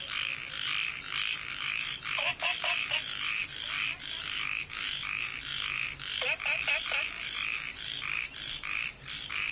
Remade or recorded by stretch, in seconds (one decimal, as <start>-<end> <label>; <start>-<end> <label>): 0.0-9.5 recorded